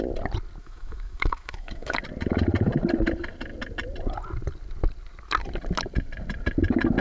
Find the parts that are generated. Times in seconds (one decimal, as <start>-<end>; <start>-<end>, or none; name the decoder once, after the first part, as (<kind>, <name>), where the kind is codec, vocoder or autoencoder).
0.6-2.0 (autoencoder, DAC-VAE)